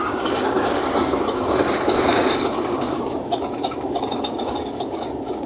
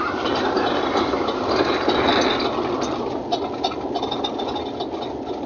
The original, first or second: second